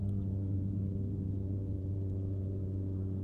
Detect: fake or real fake